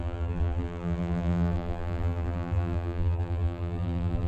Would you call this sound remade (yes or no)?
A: yes